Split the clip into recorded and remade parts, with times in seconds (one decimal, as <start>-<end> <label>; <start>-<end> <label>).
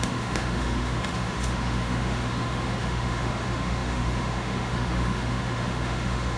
0.0-6.4 remade